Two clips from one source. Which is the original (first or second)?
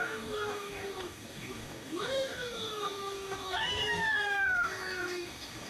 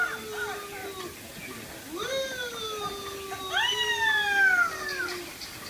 second